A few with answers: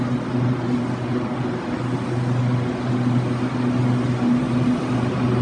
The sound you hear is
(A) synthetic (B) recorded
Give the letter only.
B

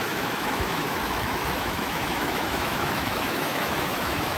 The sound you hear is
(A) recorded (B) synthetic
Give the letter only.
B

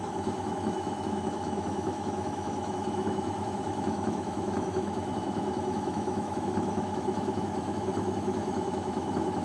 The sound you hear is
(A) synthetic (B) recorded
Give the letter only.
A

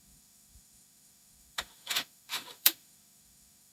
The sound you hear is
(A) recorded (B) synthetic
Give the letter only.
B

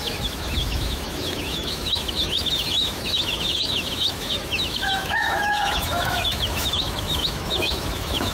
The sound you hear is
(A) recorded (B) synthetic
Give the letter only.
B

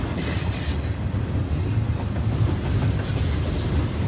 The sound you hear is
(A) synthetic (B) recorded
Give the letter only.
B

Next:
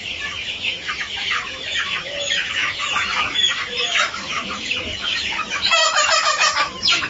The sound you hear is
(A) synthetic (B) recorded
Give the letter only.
A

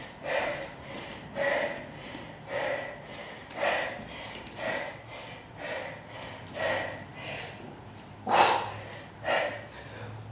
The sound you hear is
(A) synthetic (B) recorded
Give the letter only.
B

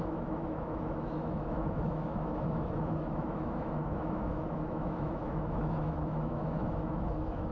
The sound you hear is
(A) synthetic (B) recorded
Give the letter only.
A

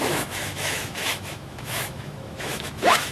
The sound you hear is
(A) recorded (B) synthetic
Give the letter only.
B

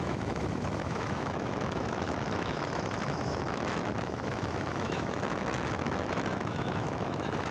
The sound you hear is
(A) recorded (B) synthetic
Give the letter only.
B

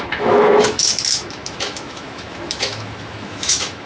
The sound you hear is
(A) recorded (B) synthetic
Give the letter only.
B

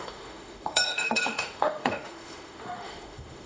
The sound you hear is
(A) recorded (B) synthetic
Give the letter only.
B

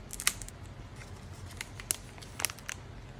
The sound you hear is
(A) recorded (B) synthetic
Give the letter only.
A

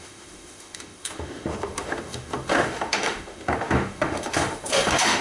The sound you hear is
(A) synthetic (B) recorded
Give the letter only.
A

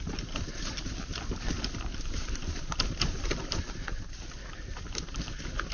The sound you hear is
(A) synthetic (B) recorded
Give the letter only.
B